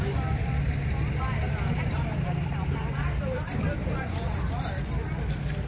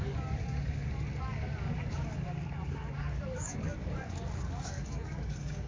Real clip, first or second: first